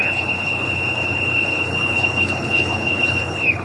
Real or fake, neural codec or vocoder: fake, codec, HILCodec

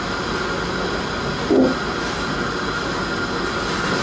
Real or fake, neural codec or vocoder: real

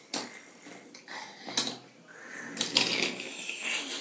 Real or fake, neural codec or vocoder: real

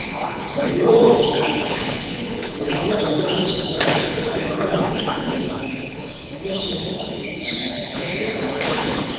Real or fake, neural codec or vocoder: fake, codec, HILCodec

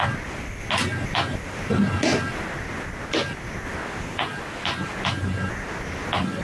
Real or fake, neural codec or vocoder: real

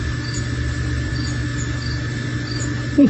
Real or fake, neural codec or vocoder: real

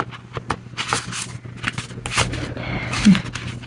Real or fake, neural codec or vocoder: real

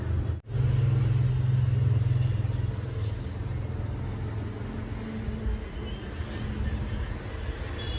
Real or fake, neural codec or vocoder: real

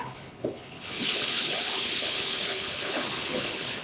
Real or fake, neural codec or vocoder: fake, codec, HILCodec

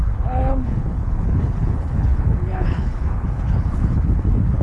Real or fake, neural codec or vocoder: fake, codec, HILCodec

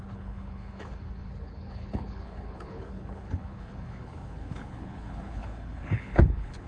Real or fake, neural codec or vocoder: fake, codec, HILCodec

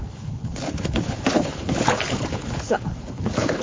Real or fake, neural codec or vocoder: fake, codec, HILCodec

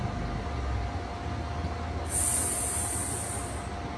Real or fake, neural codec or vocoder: real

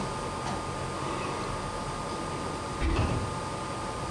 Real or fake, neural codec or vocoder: real